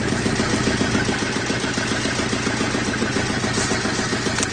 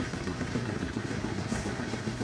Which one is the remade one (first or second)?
second